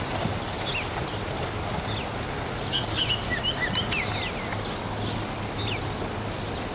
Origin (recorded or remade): recorded